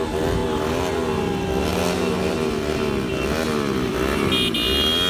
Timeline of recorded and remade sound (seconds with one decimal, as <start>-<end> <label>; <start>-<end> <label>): 0.0-5.1 recorded